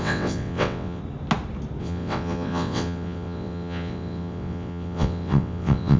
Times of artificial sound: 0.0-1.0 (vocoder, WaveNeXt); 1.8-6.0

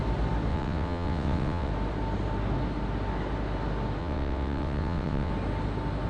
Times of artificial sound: 0.5-1.7 (vocoder, WaveNeXt); 4.0-5.3